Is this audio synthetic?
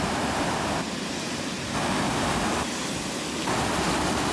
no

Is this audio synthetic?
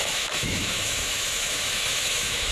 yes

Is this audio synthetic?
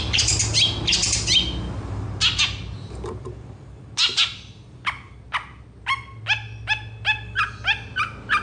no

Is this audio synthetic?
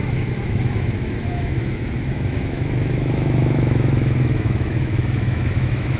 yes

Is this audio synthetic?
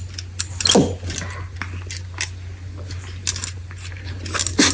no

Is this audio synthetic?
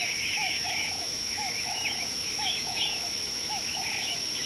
yes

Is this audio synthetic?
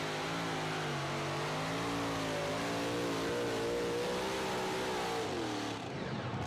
no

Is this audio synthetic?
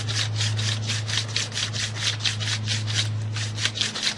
no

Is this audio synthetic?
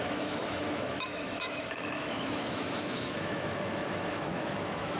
yes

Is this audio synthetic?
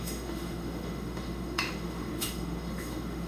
yes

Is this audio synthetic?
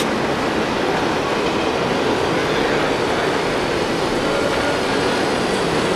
no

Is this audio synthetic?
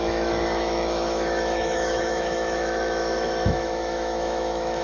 yes